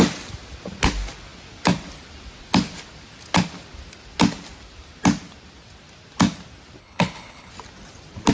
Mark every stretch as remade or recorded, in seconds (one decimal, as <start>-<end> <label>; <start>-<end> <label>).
0.0-6.8 recorded; 6.8-7.5 remade; 7.5-8.3 recorded